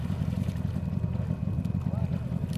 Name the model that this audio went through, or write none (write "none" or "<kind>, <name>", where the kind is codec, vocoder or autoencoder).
none